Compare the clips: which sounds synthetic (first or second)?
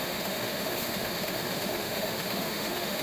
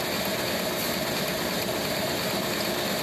first